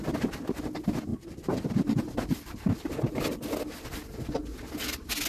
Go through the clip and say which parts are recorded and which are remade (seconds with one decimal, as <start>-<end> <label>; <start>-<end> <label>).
0.0-1.1 recorded; 1.1-4.3 remade; 4.3-5.3 recorded